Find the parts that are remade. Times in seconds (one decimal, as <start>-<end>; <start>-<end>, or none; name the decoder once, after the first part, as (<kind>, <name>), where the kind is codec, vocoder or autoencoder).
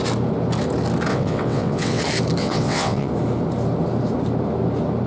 1.1-2.0 (vocoder, WaveNeXt); 2.4-3.1